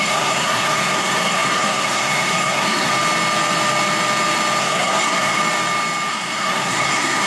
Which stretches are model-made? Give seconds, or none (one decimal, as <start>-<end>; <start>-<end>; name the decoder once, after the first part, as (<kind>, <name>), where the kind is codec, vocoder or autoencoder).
0.0-2.9 (codec, SNAC); 4.6-5.4; 6.1-7.3